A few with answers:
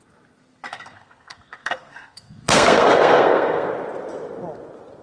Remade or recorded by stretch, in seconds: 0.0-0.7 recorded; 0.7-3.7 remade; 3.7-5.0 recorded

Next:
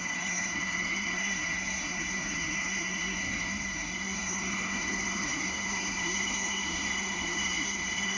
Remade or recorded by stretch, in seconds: 0.0-8.2 remade

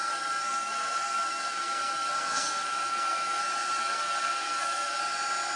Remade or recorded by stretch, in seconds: 0.0-3.4 remade; 3.4-3.8 recorded; 3.8-5.0 remade; 5.0-5.6 recorded

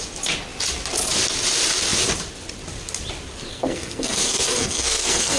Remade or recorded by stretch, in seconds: 0.0-3.5 recorded; 3.5-5.4 remade

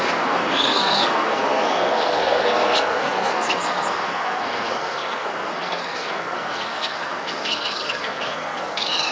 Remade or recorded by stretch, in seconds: 0.0-9.1 remade

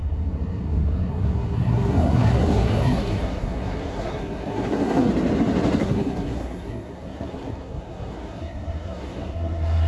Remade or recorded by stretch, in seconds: 0.0-5.1 remade; 5.1-5.8 recorded; 5.8-9.9 remade

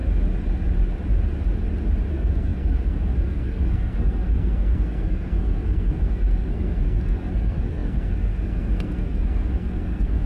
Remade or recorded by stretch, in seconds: 0.0-2.1 recorded; 2.1-10.3 remade

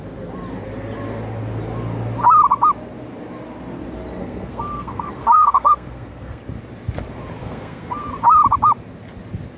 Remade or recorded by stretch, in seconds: 0.0-4.2 recorded; 4.2-6.4 remade; 6.4-7.4 recorded; 7.4-8.1 remade; 8.1-9.6 recorded